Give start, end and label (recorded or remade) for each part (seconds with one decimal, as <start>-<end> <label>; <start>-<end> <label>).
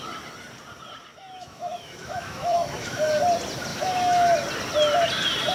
0.0-1.1 recorded; 1.1-3.2 remade; 3.2-3.7 recorded; 3.7-4.3 remade; 4.3-5.5 recorded